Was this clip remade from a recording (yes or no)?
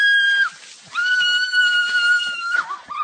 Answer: no